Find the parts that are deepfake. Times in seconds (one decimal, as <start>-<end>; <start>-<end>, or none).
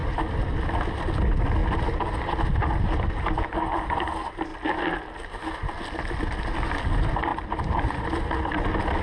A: none